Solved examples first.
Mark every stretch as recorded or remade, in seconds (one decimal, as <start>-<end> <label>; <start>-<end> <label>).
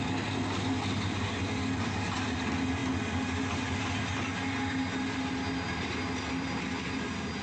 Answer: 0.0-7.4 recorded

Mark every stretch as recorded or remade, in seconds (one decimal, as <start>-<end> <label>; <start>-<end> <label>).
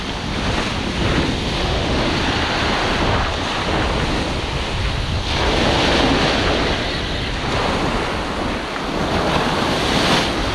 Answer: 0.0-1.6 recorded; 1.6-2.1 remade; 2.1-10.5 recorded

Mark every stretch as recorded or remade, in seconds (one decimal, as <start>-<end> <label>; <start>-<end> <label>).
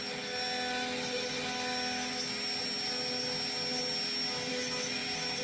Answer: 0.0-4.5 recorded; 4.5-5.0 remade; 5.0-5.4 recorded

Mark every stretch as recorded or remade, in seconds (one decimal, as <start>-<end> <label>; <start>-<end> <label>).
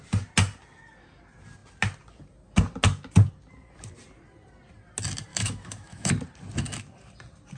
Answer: 0.0-5.3 recorded; 5.3-6.1 remade; 6.1-7.6 recorded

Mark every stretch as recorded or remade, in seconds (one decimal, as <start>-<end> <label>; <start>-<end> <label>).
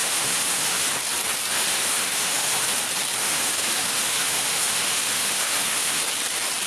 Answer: 0.0-0.9 remade; 0.9-1.5 recorded; 1.5-2.8 remade; 2.8-3.2 recorded; 3.2-6.0 remade; 6.0-6.7 recorded